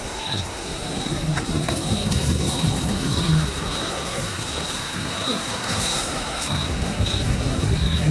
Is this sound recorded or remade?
remade